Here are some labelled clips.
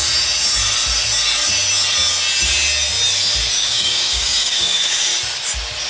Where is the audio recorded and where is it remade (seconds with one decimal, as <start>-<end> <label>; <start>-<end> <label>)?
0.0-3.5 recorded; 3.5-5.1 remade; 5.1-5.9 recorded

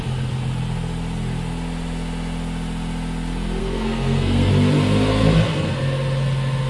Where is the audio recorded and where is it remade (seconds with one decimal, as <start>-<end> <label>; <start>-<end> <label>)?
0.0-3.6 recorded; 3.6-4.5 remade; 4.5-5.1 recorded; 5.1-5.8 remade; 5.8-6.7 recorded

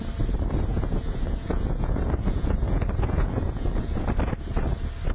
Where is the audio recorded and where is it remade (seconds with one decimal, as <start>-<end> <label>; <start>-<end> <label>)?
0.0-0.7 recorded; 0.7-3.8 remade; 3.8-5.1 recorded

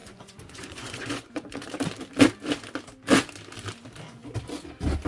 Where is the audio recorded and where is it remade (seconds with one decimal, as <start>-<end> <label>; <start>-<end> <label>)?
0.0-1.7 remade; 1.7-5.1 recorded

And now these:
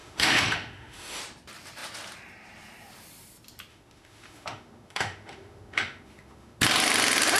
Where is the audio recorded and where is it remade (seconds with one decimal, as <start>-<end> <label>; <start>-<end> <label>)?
0.0-1.2 remade; 1.2-3.7 recorded; 3.7-6.6 remade; 6.6-7.4 recorded

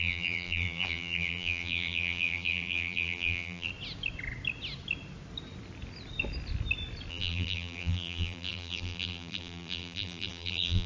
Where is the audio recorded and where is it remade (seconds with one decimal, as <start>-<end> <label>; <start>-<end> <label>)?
0.0-3.7 remade; 3.7-7.1 recorded; 7.1-10.9 remade

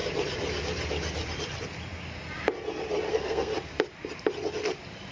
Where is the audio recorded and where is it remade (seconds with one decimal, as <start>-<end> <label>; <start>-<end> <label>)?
0.0-3.1 recorded; 3.1-3.5 remade; 3.5-5.1 recorded

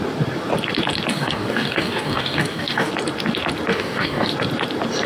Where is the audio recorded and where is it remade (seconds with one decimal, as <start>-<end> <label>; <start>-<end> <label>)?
0.0-1.1 recorded; 1.1-2.9 remade; 2.9-3.7 recorded; 3.7-4.3 remade; 4.3-5.1 recorded